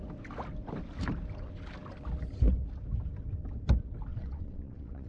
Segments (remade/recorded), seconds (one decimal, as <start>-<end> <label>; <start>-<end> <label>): 0.0-4.1 recorded; 4.1-5.1 remade